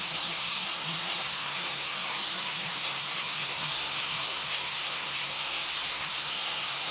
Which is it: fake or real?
fake